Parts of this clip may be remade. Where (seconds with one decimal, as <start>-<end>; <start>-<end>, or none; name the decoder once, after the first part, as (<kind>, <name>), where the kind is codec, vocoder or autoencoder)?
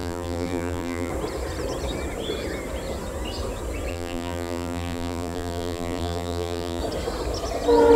0.0-1.1 (vocoder, BigVGAN v2); 3.9-6.8